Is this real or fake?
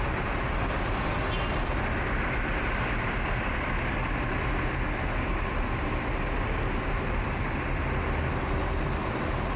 real